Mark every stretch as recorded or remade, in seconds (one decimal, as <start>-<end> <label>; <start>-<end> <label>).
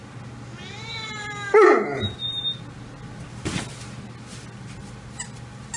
0.0-5.8 recorded